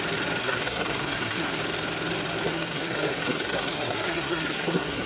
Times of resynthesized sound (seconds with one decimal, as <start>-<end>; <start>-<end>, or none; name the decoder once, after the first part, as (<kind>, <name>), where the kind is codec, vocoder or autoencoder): 0.4-1.6 (codec, SNAC); 2.5-5.1